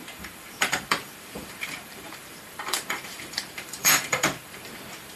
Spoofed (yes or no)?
yes